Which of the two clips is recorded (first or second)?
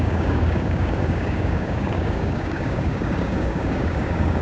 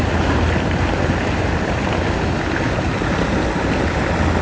second